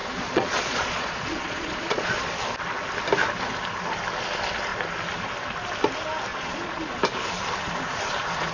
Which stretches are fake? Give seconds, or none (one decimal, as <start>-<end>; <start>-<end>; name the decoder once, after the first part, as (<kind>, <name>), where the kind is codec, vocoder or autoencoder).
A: 0.0-2.3 (vocoder, Vocos); 6.3-7.0